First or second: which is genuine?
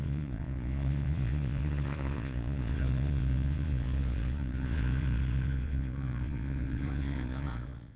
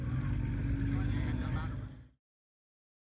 second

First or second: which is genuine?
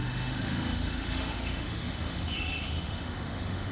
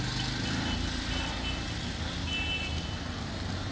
second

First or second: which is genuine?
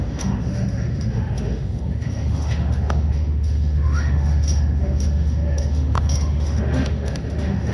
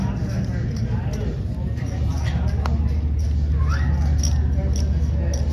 second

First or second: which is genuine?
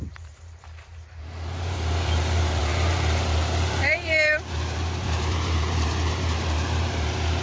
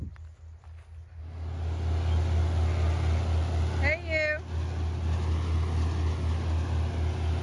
second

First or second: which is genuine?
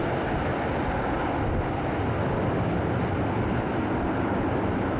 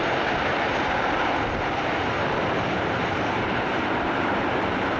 first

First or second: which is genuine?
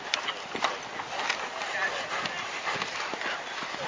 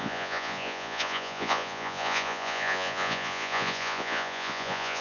first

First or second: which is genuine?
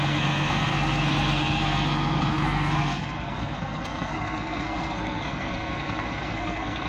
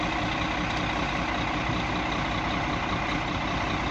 second